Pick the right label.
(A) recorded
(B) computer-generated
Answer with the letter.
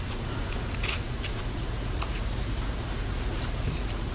B